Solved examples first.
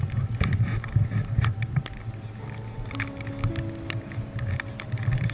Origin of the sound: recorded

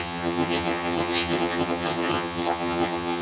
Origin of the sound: remade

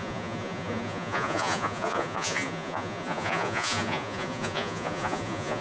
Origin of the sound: remade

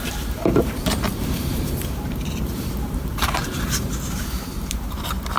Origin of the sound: remade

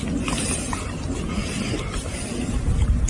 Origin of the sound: recorded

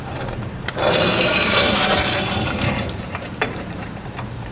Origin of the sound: remade